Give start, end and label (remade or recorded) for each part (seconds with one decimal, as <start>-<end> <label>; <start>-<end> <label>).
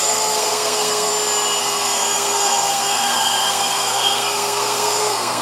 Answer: 0.0-1.1 remade; 1.1-1.6 recorded; 1.6-5.4 remade